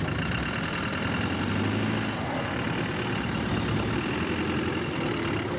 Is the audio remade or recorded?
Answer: recorded